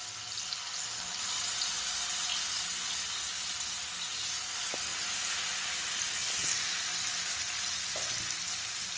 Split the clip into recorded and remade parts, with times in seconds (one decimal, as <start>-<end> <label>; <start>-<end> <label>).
0.0-9.0 recorded